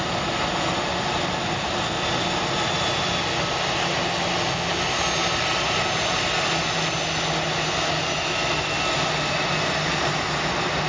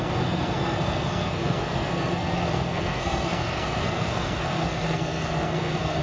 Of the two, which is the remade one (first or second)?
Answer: second